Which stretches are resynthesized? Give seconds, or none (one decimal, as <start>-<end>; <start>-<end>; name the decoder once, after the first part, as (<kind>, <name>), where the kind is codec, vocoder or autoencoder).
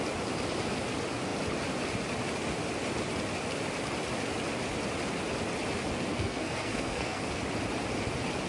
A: 6.1-7.4 (codec, SNAC)